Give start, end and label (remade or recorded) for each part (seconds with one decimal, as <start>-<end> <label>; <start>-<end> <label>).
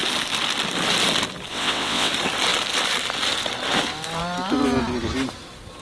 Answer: 0.0-1.5 recorded; 1.5-2.1 remade; 2.1-5.8 recorded